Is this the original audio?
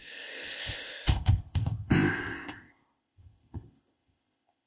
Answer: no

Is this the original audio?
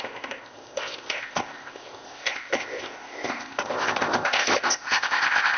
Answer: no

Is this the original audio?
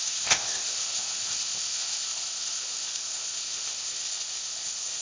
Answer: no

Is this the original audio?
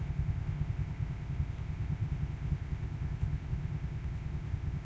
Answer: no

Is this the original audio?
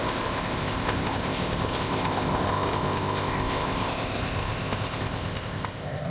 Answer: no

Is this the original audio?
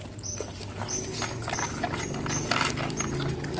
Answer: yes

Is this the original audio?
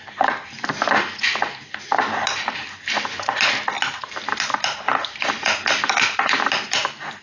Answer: yes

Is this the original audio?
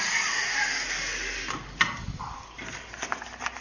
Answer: yes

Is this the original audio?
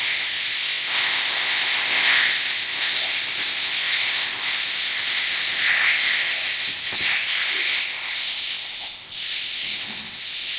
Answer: no